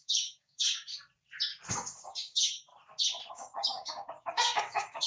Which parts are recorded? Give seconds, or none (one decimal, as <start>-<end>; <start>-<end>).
0.9-1.7; 2.7-3.3